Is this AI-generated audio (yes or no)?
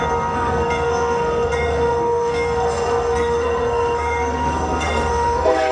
yes